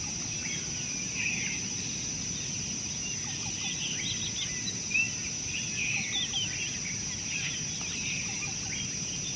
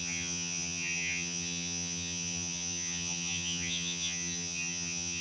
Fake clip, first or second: second